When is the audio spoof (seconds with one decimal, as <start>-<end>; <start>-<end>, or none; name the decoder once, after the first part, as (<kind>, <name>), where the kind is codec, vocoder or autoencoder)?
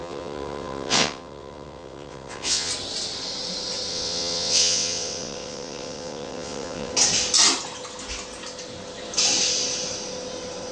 0.0-2.7 (vocoder, WaveNeXt); 3.9-6.9